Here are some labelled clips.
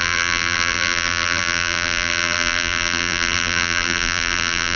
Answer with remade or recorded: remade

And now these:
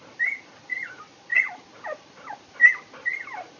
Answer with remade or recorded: recorded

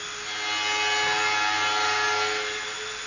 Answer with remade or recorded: recorded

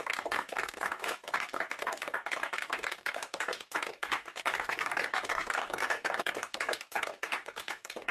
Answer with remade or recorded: remade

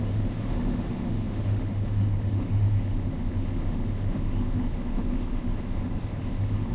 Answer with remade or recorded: remade